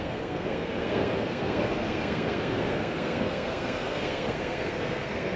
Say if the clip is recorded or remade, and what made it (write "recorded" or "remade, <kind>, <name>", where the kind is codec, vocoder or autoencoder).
remade, codec, SNAC